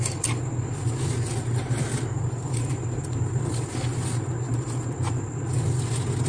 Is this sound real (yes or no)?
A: yes